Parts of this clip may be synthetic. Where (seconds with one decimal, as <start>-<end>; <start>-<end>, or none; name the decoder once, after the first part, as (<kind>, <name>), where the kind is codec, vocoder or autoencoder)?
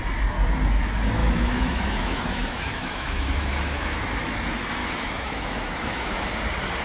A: 1.2-4.0 (autoencoder, DAC-VAE); 4.8-6.3